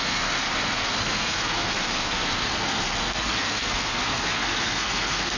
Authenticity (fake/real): fake